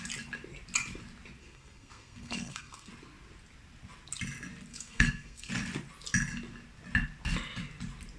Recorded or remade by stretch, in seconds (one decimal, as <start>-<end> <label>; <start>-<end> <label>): 0.0-1.4 recorded; 1.4-2.9 remade; 2.9-4.7 recorded; 4.7-5.5 remade; 5.5-8.2 recorded